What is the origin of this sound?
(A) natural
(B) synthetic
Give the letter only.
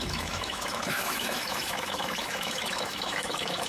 B